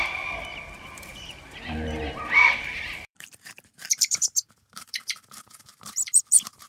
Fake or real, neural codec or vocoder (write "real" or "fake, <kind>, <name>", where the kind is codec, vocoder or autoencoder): fake, vocoder, BigVGAN v2